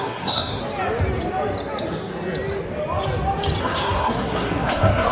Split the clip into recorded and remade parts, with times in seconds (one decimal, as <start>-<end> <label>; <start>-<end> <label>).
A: 0.0-0.6 remade; 0.6-3.6 recorded; 3.6-5.1 remade